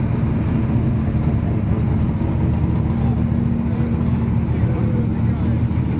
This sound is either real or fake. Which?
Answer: real